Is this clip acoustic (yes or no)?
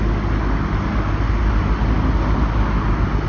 yes